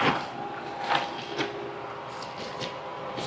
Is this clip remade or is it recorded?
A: recorded